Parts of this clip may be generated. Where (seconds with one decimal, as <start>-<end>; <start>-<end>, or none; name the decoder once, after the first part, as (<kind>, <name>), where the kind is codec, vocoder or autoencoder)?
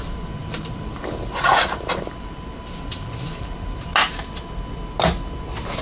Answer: 0.0-3.9 (vocoder, BigVGAN v2)